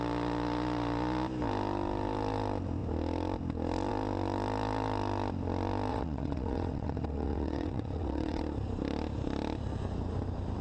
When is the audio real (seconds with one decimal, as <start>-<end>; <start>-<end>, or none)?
0.0-5.9; 8.4-10.6